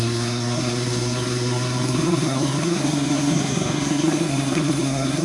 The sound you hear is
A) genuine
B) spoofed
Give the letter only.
B